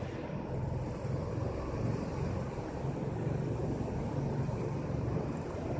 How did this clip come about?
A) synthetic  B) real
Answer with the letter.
B